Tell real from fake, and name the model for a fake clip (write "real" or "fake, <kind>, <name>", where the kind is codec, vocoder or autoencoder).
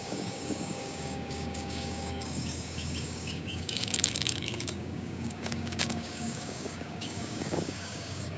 fake, codec, DAC